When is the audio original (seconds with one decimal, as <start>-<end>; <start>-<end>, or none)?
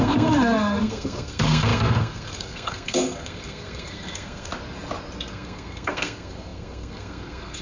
4.5-5.3